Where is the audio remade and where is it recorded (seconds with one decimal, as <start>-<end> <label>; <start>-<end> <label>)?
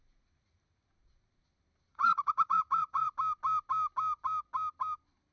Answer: 0.0-1.9 recorded; 1.9-3.1 remade; 3.1-5.3 recorded